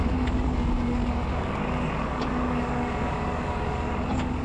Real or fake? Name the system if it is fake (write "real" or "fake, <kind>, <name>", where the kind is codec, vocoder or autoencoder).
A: fake, codec, DAC